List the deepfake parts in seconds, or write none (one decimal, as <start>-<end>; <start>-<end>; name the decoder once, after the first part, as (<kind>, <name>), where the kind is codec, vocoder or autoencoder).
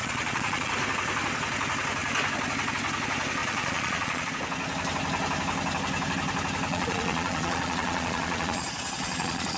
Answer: 0.0-0.7 (vocoder, Vocos); 3.4-4.3; 6.7-9.6